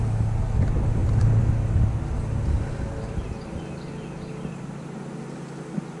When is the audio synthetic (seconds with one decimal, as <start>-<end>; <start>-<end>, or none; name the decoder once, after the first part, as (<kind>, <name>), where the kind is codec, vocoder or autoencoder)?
none